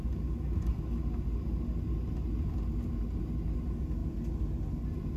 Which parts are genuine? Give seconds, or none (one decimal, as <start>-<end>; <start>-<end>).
0.0-5.2